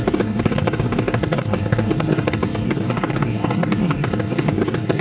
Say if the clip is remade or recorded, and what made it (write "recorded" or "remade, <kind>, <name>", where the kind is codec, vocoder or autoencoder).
remade, codec, SNAC